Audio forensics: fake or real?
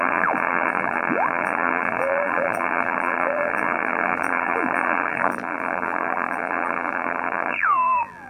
fake